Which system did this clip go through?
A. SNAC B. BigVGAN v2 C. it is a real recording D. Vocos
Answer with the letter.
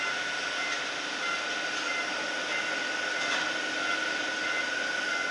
C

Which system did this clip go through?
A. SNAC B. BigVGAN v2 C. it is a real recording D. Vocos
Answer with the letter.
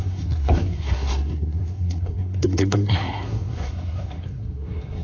A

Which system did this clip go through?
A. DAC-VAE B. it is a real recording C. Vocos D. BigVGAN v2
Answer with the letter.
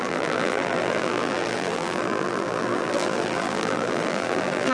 D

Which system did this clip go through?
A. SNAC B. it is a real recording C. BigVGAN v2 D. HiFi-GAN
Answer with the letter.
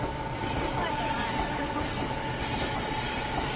B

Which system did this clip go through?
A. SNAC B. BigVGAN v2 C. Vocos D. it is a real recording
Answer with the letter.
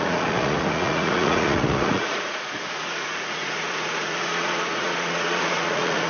C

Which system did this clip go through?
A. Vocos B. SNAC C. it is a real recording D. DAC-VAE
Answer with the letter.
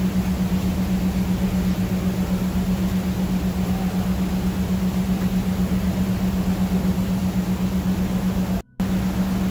C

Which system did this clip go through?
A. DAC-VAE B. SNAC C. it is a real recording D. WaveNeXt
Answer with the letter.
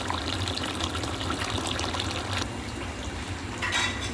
C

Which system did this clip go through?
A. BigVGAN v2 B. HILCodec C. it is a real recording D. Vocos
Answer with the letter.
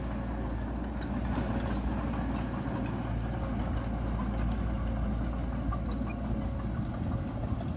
C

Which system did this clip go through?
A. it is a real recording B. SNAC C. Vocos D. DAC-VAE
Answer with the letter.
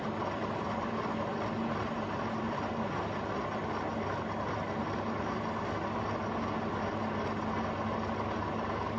A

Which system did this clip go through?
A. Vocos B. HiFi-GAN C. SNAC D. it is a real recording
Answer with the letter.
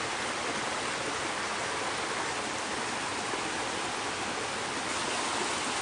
D